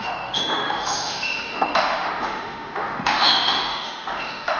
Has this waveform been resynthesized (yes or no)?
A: yes